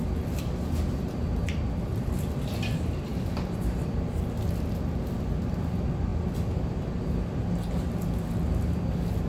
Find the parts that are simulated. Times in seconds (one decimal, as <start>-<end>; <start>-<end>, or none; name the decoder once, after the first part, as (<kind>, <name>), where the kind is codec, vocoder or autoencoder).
1.4-2.3 (vocoder, BigVGAN v2); 3.1-4.2